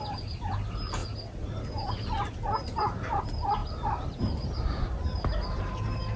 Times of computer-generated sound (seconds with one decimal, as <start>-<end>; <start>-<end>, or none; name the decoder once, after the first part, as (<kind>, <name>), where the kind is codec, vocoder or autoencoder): none